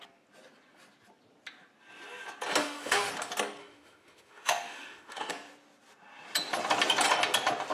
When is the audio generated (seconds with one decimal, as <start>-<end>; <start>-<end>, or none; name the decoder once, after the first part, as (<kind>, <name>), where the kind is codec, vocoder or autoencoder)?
2.6-3.1 (autoencoder, DAC-VAE); 3.6-5.3